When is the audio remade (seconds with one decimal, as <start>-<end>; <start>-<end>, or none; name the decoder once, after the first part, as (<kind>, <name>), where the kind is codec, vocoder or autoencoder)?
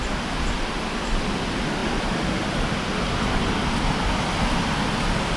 none